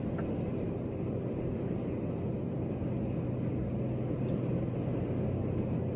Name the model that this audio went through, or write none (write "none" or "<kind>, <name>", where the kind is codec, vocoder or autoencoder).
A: none